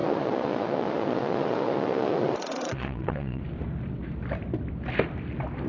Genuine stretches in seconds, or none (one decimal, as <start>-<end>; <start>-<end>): 3.4-5.7